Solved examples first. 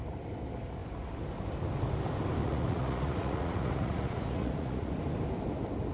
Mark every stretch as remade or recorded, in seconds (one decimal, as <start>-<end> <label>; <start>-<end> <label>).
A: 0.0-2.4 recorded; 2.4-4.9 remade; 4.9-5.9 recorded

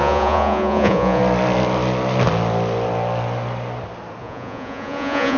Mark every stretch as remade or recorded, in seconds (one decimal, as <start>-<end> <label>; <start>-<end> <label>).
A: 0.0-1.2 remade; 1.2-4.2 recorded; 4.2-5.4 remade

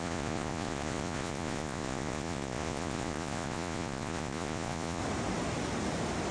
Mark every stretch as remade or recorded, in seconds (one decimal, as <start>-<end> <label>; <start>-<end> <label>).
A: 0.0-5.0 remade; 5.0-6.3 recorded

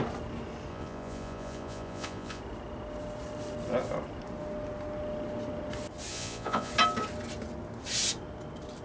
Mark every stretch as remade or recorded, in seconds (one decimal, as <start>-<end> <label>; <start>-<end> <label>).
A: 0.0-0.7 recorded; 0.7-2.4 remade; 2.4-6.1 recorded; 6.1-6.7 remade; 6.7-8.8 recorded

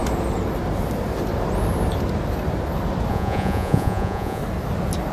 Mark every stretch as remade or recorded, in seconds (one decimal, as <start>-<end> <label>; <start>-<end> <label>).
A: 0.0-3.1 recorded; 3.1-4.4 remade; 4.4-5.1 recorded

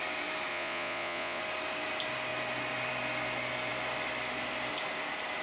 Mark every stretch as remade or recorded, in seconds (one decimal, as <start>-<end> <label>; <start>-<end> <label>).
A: 0.0-0.5 recorded; 0.5-1.4 remade; 1.4-5.4 recorded